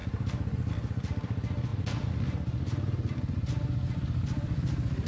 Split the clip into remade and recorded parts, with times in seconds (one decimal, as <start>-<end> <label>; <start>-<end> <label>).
0.0-0.7 remade; 0.7-1.7 recorded; 1.7-5.1 remade